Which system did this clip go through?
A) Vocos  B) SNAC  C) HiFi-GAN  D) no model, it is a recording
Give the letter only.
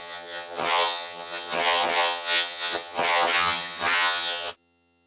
C